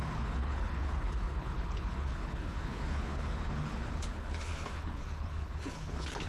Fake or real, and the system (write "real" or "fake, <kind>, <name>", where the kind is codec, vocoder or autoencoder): fake, codec, HILCodec